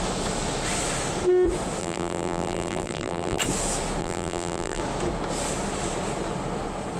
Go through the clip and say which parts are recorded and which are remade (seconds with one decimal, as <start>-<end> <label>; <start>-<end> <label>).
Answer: 0.0-1.8 recorded; 1.8-3.4 remade; 3.4-4.0 recorded; 4.0-4.8 remade; 4.8-7.0 recorded